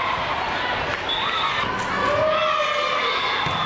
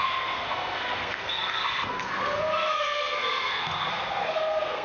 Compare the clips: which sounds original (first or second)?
first